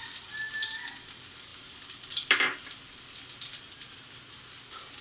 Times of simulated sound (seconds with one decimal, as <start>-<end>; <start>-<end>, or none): 1.5-4.1